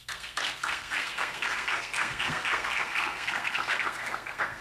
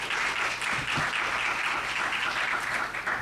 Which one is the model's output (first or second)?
first